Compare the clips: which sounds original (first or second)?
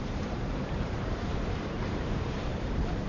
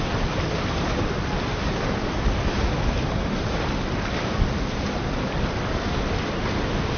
second